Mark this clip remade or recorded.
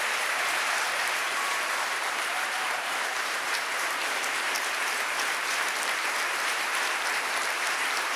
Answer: remade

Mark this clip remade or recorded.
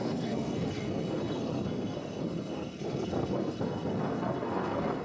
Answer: remade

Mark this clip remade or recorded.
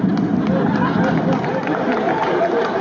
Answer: recorded